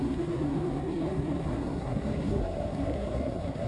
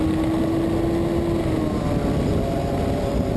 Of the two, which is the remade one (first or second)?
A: first